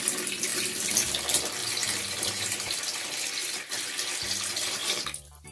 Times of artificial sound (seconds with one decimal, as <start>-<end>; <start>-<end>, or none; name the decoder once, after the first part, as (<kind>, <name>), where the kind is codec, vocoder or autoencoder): 1.6-2.7 (vocoder, BigVGAN v2); 4.8-5.5